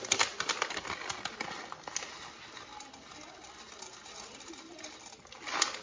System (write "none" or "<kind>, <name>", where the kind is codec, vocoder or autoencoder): none